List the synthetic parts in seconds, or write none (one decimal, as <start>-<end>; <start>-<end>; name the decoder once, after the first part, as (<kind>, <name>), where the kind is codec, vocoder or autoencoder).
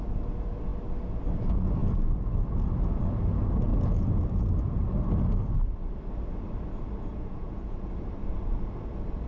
3.7-4.2 (vocoder, Vocos); 7.1-7.9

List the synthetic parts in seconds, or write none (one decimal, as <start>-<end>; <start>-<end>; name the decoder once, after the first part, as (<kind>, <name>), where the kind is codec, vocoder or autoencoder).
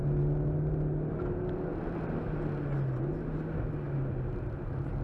none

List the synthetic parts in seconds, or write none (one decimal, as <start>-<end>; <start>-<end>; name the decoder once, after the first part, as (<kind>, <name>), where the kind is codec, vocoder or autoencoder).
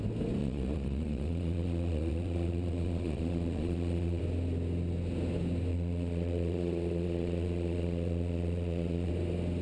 0.4-4.2 (vocoder, Vocos); 5.7-9.1